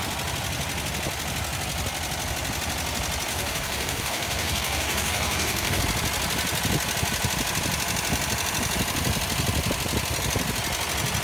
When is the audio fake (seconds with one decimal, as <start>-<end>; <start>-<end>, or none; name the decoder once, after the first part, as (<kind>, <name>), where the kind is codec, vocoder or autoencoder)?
3.3-5.8 (codec, DAC)